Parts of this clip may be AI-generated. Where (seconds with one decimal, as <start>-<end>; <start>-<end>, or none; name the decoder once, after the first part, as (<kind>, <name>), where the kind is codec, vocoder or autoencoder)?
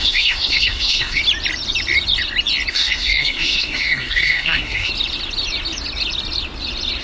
0.0-1.2 (codec, SNAC); 2.7-4.9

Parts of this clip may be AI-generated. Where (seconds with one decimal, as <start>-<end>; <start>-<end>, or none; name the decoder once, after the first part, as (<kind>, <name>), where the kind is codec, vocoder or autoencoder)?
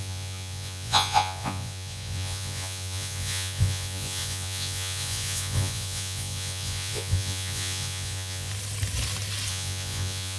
0.0-8.5 (vocoder, Vocos); 9.5-10.4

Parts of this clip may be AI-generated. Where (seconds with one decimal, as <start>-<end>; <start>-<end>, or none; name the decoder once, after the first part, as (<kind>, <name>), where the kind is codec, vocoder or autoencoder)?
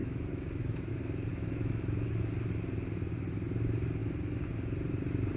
0.0-0.9 (autoencoder, DAC-VAE); 1.3-2.3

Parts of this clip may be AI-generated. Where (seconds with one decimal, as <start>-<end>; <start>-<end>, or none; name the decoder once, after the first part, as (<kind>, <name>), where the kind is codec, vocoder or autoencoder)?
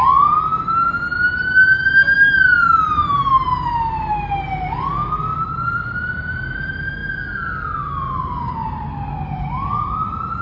none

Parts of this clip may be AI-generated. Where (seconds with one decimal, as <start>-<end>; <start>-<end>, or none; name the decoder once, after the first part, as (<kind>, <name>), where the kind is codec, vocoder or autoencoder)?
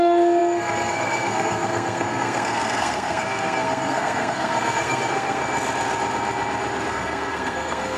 0.0-5.4 (codec, SNAC); 6.9-8.0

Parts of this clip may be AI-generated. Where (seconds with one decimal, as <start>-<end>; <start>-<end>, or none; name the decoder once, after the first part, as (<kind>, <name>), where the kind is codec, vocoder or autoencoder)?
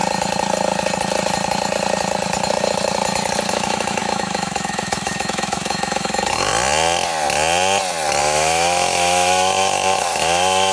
3.5-6.5 (autoencoder, DAC-VAE); 8.2-10.7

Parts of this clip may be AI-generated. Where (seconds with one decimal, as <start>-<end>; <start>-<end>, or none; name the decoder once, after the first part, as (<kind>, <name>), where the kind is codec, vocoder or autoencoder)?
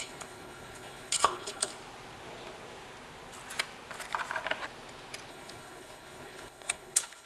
0.0-1.7 (codec, HILCodec); 5.3-7.3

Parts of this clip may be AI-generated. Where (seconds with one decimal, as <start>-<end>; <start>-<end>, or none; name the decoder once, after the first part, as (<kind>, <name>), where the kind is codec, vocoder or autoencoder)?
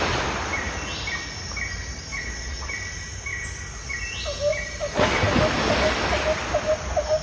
2.1-2.7 (vocoder, Vocos)